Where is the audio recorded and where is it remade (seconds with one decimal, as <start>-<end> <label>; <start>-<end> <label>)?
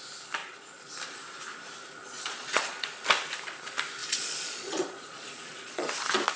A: 0.0-0.4 recorded; 0.4-0.9 remade; 0.9-2.0 recorded; 2.0-2.9 remade; 2.9-4.0 recorded; 4.0-5.9 remade; 5.9-6.4 recorded